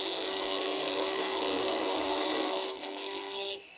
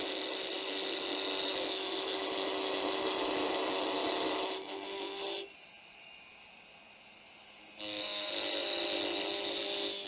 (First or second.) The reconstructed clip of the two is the first